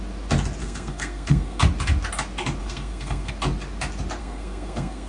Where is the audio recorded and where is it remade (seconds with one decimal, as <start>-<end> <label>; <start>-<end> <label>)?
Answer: 0.0-0.6 recorded; 0.6-1.6 remade; 1.6-2.6 recorded; 2.6-3.3 remade; 3.3-4.2 recorded; 4.2-5.1 remade